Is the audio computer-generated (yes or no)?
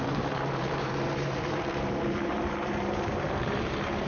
yes